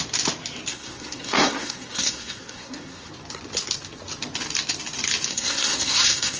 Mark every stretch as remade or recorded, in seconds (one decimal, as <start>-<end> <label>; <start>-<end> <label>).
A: 0.0-0.7 recorded; 0.7-3.1 remade; 3.1-5.3 recorded; 5.3-6.4 remade